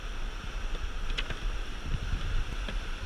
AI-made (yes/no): yes